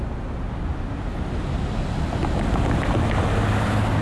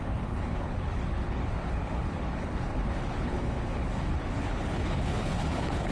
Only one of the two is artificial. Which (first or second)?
second